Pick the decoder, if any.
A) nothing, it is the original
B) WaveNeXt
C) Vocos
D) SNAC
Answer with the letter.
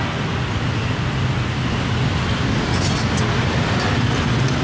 A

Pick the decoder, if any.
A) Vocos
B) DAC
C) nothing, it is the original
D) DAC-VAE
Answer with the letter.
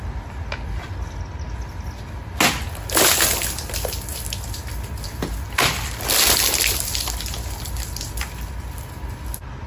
C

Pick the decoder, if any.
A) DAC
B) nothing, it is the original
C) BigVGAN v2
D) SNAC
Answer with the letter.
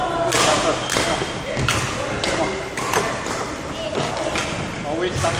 B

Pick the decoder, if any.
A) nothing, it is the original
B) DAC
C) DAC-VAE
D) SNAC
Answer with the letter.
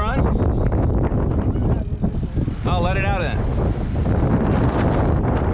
A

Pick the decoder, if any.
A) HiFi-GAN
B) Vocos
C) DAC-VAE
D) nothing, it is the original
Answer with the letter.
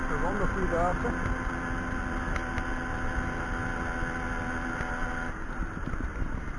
D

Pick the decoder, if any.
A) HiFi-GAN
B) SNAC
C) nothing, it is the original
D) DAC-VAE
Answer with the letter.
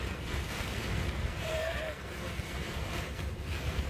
B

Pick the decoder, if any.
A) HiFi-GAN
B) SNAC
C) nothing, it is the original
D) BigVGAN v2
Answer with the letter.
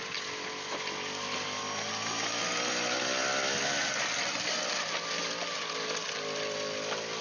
C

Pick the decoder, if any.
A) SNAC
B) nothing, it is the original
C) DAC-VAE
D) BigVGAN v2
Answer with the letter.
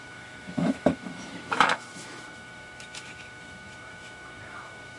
C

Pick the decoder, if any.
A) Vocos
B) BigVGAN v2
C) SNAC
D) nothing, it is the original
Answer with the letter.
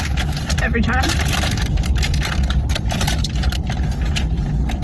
B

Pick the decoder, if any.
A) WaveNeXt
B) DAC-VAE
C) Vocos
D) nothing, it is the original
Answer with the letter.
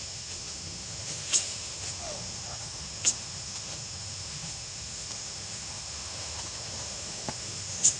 B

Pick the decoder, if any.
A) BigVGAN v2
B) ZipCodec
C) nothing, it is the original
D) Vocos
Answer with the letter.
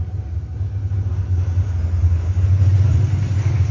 C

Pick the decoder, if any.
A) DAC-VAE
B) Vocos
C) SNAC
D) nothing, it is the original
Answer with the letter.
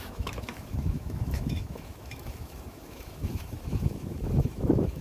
A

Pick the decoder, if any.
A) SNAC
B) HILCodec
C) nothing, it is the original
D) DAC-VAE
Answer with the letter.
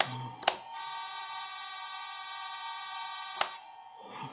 C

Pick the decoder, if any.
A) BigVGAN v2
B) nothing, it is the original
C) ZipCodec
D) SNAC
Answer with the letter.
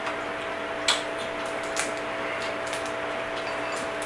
B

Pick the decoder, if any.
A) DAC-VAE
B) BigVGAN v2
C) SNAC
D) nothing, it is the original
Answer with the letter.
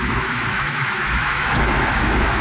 A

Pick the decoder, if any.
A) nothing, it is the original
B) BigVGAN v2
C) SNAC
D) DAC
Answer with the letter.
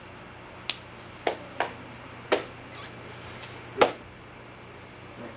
A